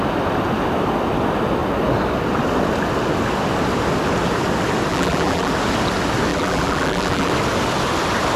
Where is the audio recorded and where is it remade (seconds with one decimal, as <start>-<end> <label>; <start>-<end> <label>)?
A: 0.0-4.9 recorded; 4.9-5.5 remade; 5.5-6.3 recorded; 6.3-7.3 remade; 7.3-8.4 recorded